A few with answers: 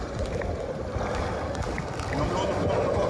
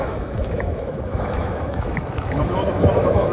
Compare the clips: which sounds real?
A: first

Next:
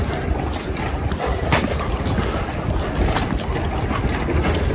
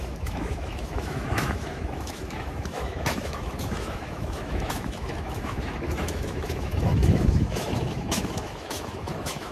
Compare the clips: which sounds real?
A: first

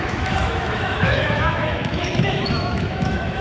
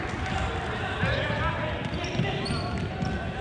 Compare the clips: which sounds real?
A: second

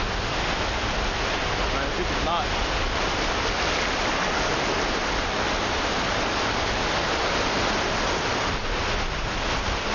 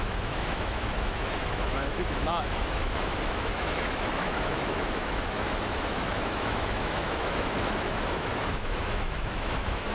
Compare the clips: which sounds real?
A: first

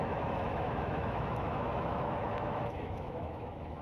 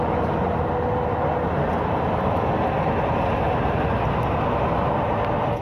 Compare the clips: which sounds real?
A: second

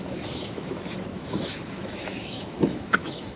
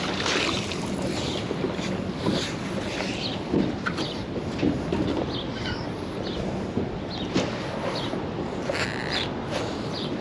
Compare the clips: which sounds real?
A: second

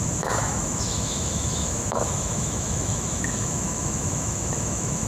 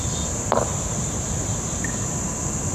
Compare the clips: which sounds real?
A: second